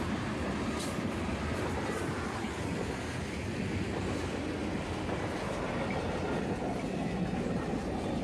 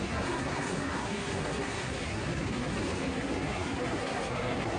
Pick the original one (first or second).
first